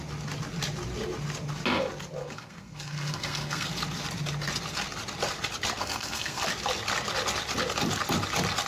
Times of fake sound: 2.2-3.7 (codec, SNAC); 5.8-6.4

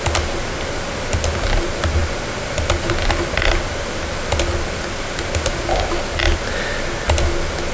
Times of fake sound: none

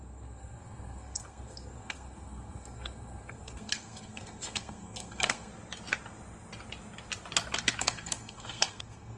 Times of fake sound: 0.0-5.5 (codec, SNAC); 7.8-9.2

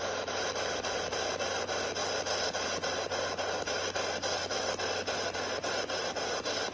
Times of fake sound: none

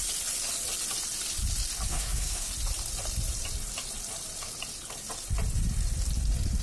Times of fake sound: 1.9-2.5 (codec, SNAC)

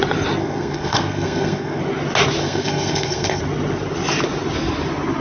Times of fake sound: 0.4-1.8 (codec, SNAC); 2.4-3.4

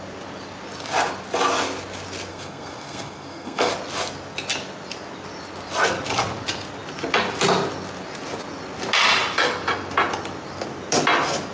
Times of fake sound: 2.3-3.7 (codec, SNAC)

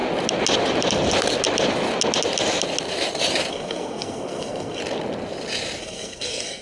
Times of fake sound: 3.5-4.8 (codec, SNAC); 5.8-6.6